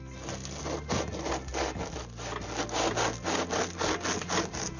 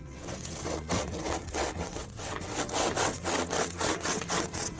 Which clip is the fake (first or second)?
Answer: second